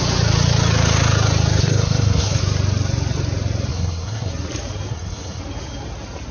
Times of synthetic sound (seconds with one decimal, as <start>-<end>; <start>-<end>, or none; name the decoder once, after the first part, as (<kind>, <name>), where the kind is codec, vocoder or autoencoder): 1.6-2.4 (codec, SNAC); 3.7-4.3; 4.9-5.4